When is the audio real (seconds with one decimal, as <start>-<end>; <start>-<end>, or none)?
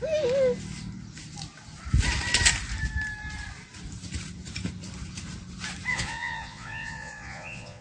0.0-5.9